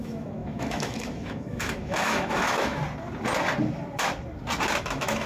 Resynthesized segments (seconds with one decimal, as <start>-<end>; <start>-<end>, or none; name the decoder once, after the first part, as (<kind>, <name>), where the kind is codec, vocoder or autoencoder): 0.0-2.8 (autoencoder, DAC-VAE); 4.8-5.3